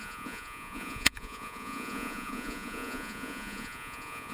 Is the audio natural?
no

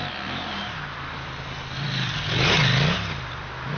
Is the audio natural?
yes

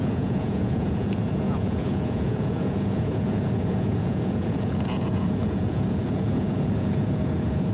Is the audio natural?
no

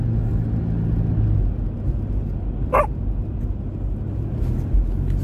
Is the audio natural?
yes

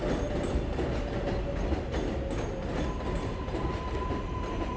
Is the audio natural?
yes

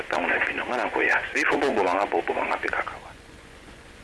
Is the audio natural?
no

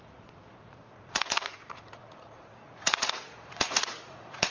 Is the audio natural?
no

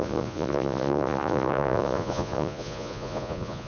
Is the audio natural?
no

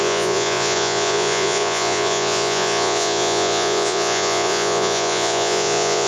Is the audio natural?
no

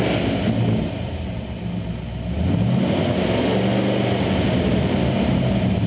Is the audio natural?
yes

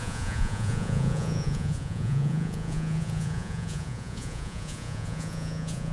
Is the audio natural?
no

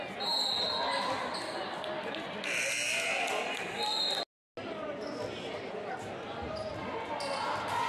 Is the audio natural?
yes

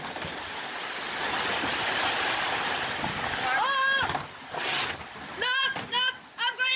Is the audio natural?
yes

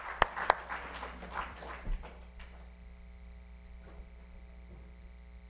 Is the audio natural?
yes